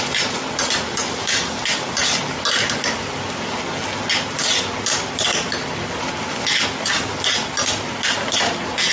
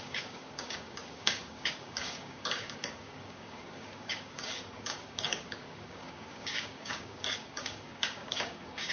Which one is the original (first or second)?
first